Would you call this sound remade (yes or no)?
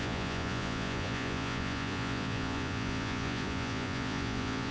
yes